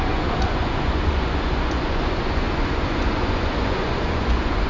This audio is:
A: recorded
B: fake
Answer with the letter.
B